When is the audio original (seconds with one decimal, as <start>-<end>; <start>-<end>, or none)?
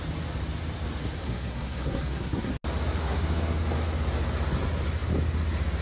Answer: 0.0-1.2; 2.5-3.0; 3.6-5.8